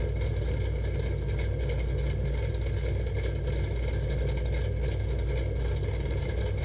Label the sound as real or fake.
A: real